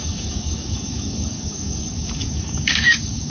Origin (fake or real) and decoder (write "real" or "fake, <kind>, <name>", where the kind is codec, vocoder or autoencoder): fake, codec, DAC